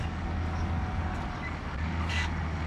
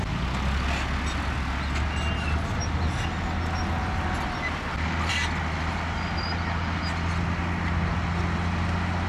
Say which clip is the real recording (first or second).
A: second